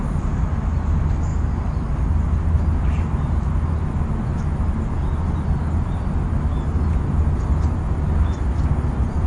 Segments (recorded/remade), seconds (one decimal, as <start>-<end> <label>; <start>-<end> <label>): 0.0-9.3 recorded